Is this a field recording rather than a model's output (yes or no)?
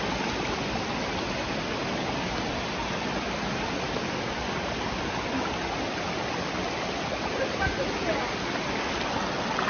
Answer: yes